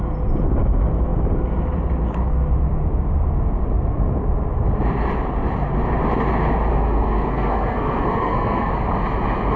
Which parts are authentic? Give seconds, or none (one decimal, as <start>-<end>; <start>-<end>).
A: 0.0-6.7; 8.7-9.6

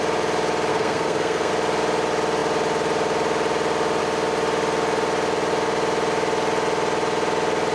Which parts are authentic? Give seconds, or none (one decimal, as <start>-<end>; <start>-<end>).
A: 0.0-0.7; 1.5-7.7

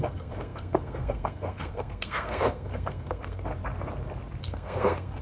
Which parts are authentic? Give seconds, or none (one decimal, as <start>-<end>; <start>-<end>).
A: 3.5-4.4

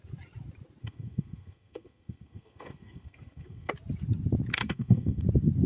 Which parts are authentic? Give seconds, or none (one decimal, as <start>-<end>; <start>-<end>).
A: 0.0-0.8; 3.7-4.5; 5.2-5.7

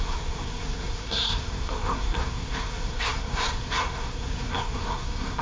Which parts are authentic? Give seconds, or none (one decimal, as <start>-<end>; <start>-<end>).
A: none